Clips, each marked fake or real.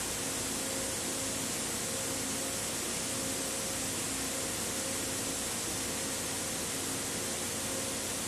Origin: real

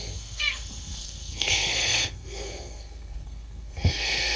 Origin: fake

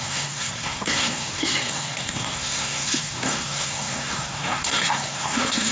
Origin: fake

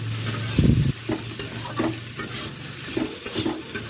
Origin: real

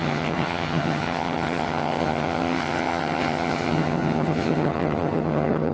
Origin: fake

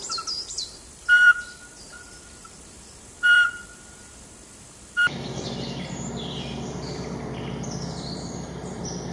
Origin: fake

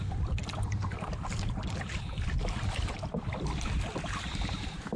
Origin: fake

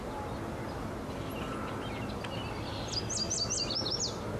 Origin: real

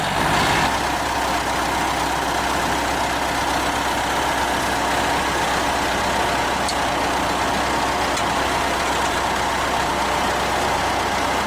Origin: real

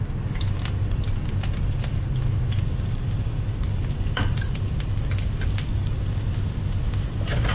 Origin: real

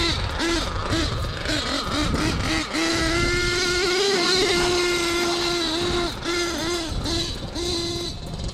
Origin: real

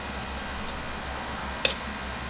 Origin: real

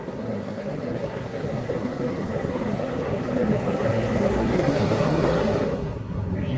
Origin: fake